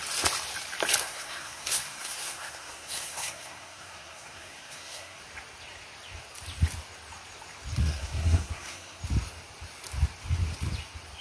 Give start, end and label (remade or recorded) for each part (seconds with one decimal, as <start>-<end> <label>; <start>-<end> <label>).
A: 0.0-1.0 recorded; 1.0-5.2 remade; 5.2-7.8 recorded; 7.8-9.0 remade; 9.0-11.2 recorded